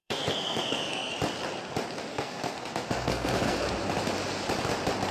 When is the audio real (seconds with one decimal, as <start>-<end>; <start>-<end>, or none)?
1.1-2.1; 3.7-5.1